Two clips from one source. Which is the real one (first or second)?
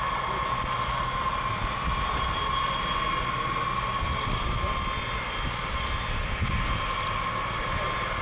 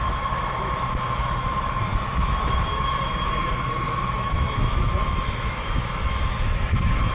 first